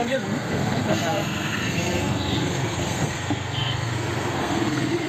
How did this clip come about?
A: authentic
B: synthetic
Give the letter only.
B